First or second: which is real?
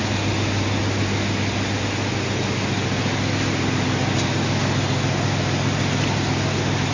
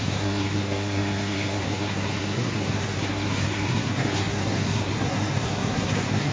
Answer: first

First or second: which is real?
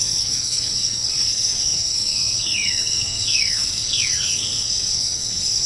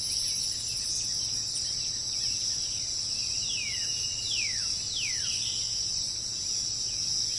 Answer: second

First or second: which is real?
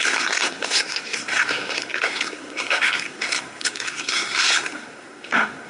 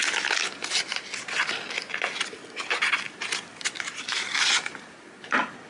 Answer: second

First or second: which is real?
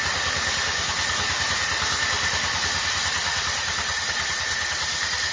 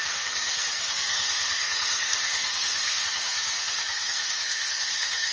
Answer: first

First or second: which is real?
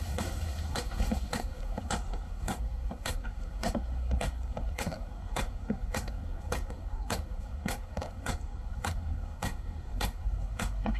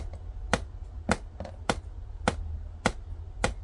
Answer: second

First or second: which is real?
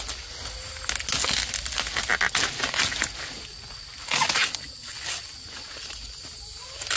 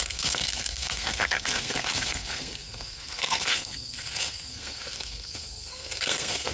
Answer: first